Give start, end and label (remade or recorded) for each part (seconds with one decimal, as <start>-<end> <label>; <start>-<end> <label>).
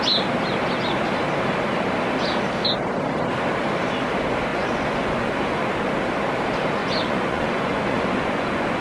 0.0-4.5 recorded; 4.5-5.7 remade; 5.7-6.8 recorded; 6.8-8.8 remade